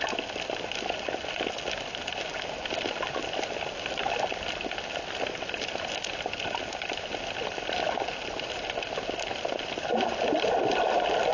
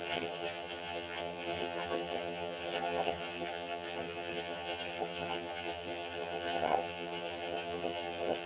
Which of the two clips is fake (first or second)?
second